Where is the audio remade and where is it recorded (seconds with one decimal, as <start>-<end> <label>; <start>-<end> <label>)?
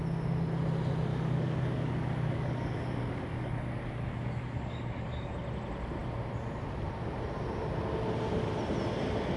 0.0-1.1 recorded; 1.1-5.3 remade; 5.3-9.4 recorded